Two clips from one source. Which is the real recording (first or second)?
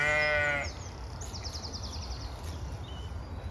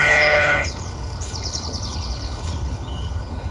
first